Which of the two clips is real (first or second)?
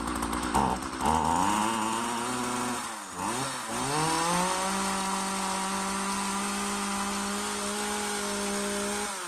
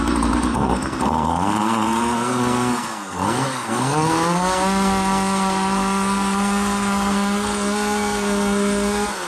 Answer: first